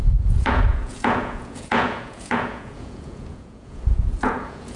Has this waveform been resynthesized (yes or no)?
yes